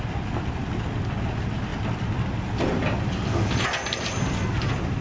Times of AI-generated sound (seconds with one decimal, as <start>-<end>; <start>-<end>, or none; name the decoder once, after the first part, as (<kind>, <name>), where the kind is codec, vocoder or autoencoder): none